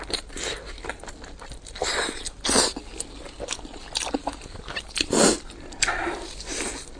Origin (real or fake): real